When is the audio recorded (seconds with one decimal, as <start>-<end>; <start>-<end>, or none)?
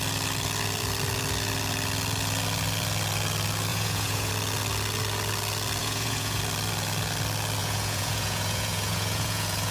0.0-3.7; 4.3-5.8; 6.4-7.6